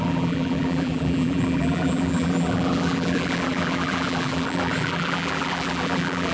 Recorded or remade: remade